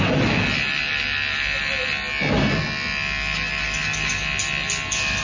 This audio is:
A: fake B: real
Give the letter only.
B